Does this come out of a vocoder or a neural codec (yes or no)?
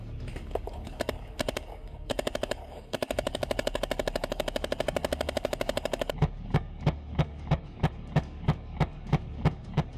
yes